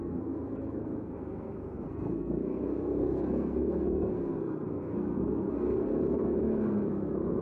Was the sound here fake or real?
fake